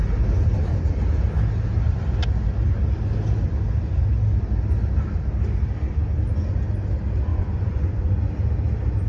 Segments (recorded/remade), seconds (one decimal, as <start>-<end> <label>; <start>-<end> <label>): 0.0-7.3 recorded; 7.3-8.1 remade; 8.1-9.1 recorded